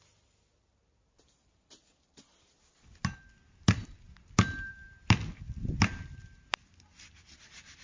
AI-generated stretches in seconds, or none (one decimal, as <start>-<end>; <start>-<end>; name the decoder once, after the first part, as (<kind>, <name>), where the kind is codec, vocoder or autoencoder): none